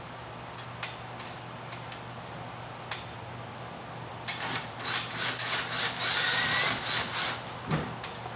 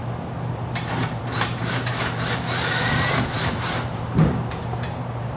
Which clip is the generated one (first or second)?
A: second